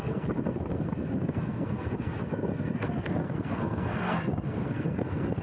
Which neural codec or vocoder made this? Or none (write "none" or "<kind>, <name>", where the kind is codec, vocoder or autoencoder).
codec, SNAC